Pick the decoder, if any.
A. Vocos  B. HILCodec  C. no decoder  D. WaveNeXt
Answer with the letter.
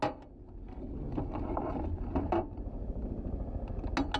C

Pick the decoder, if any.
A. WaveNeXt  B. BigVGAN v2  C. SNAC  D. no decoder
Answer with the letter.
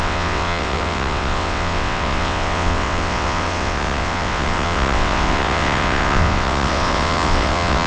A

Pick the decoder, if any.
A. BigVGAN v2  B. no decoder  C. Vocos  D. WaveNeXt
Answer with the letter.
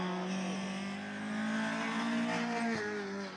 B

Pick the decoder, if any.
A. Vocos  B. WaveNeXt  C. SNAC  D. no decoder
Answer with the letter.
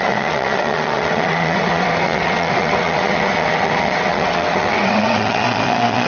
B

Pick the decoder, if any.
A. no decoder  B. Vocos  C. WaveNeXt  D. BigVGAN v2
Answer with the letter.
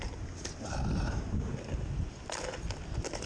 A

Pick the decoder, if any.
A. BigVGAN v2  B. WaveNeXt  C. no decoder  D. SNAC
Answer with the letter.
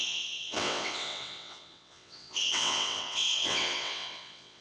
B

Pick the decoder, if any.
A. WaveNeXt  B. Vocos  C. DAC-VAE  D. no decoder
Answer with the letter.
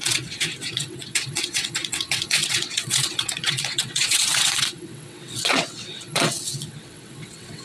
A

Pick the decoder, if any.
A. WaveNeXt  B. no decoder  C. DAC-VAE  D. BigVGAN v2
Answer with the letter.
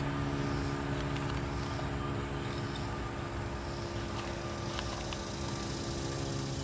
B